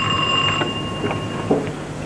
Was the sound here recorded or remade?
recorded